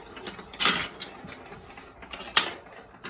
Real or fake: real